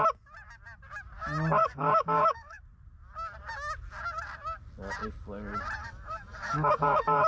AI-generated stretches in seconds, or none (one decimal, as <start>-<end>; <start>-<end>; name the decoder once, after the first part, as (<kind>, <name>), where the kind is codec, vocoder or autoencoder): 1.6-2.6 (codec, DAC); 5.8-7.3